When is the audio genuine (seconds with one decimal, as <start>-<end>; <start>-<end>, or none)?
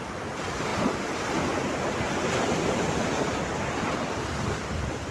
0.0-5.1